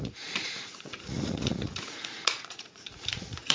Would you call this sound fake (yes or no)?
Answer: yes